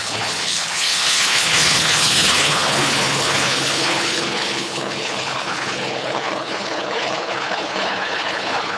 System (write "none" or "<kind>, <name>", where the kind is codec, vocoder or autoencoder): codec, HILCodec